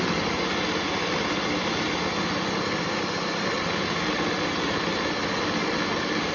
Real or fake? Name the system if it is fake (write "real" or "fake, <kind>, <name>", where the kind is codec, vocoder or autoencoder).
real